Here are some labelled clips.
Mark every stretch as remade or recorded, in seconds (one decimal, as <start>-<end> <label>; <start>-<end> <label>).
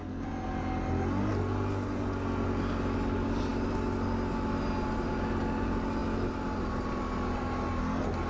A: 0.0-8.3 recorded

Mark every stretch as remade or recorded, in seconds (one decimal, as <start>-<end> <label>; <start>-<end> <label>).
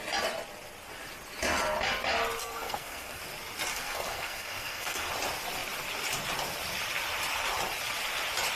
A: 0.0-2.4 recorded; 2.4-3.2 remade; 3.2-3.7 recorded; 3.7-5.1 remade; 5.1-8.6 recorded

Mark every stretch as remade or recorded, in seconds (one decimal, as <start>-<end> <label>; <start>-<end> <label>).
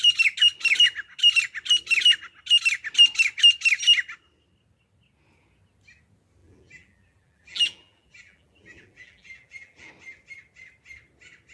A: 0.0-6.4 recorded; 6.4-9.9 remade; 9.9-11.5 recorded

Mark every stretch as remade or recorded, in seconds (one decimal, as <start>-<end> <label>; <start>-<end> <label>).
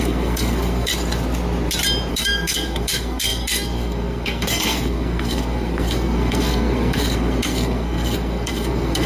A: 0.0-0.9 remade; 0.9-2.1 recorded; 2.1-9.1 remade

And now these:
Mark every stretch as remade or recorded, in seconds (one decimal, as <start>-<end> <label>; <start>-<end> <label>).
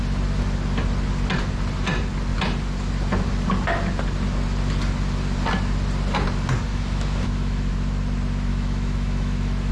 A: 0.0-6.7 recorded; 6.7-7.7 remade; 7.7-8.5 recorded; 8.5-9.7 remade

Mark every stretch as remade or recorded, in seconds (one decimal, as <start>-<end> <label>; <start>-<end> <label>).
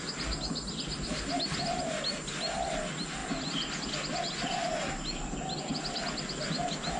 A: 0.0-7.0 recorded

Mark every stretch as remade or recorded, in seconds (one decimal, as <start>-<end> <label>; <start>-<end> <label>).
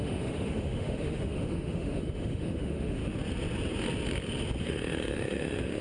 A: 0.0-3.0 remade; 3.0-4.6 recorded; 4.6-5.8 remade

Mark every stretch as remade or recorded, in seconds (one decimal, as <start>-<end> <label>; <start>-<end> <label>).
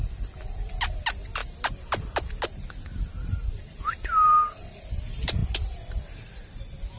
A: 0.0-7.0 recorded